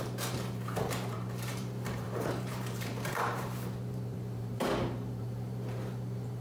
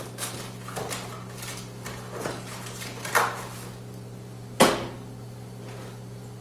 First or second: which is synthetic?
first